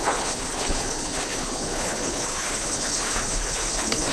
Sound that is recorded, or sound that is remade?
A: remade